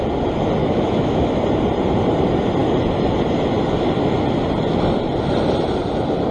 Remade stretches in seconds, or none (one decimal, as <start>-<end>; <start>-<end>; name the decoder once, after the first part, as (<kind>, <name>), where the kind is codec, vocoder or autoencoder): 0.6-1.4 (autoencoder, DAC-VAE)